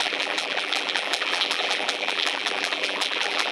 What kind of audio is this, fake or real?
fake